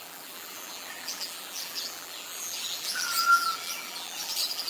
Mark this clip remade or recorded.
remade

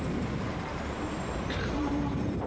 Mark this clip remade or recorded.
remade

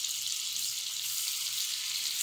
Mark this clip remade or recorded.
recorded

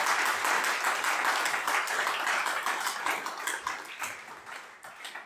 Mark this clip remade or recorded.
remade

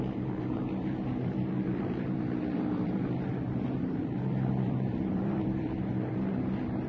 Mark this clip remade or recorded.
remade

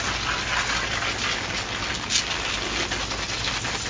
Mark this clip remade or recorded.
recorded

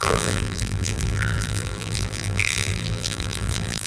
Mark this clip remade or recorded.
remade